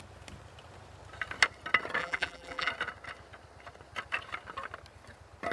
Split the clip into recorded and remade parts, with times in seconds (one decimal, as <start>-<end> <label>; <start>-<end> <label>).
0.0-2.0 recorded; 2.0-2.7 remade; 2.7-5.5 recorded